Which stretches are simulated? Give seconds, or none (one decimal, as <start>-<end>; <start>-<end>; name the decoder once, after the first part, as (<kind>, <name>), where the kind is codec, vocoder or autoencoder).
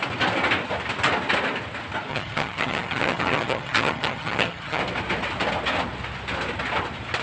2.1-4.8 (vocoder, HiFi-GAN)